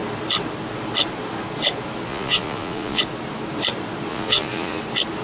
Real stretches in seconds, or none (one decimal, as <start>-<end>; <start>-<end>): 0.0-2.1; 3.0-4.1; 4.8-5.2